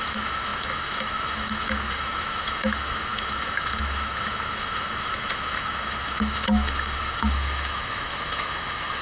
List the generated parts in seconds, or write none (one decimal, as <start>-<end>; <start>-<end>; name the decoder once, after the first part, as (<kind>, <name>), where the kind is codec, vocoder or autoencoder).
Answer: 0.0-9.0 (autoencoder, DAC-VAE)